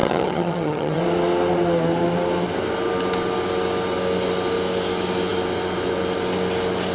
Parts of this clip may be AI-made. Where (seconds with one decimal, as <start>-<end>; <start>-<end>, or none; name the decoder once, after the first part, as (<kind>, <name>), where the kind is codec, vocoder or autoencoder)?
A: 0.0-1.0 (vocoder, HiFi-GAN)